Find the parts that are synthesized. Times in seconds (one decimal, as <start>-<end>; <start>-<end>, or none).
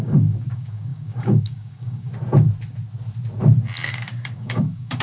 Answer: 0.0-2.1; 3.9-5.0